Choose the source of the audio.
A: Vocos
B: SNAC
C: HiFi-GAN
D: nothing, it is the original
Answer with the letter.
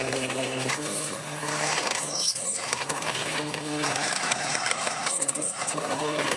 B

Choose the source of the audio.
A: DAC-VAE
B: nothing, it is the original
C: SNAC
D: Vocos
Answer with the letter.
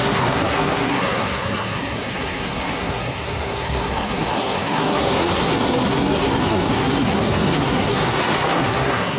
C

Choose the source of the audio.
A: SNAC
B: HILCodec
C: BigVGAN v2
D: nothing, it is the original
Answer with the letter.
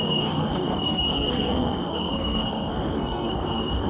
A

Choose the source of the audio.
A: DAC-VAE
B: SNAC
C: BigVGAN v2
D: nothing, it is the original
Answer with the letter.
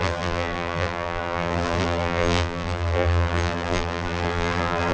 C